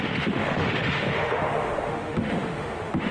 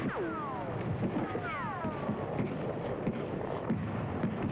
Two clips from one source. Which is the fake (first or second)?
first